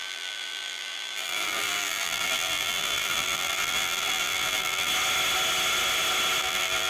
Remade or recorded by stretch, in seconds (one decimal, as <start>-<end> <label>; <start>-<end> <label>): 0.0-4.9 remade; 4.9-6.4 recorded; 6.4-6.9 remade